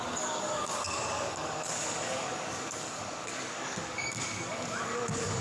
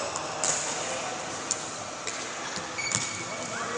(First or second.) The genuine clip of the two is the second